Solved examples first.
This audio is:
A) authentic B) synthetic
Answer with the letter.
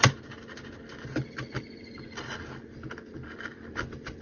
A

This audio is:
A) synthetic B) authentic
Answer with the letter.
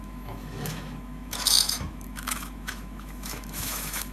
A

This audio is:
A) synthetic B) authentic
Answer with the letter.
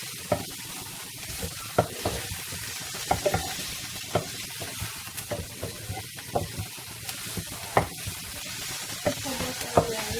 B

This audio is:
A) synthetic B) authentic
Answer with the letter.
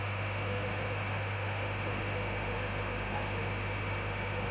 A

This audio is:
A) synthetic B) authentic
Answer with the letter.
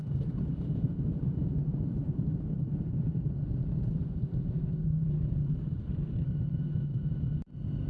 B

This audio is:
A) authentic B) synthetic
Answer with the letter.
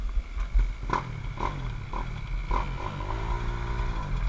A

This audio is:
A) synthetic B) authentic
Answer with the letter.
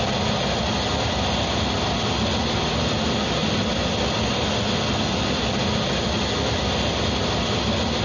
B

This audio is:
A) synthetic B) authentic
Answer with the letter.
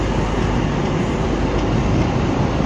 B